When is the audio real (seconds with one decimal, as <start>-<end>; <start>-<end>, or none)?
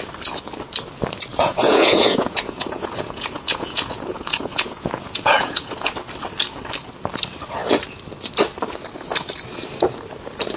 0.0-1.3; 5.9-10.6